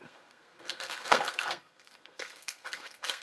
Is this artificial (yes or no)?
yes